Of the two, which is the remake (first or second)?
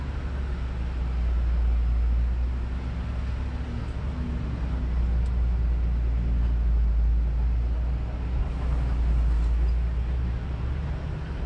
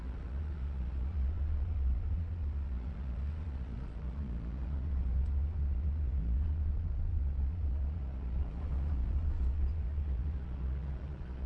second